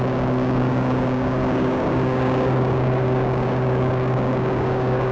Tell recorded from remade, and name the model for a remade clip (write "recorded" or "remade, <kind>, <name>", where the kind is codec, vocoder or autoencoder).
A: remade, codec, DAC